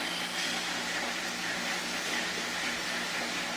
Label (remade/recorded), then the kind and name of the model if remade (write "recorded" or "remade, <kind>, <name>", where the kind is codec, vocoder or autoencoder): recorded